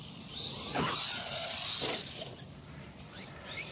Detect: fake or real real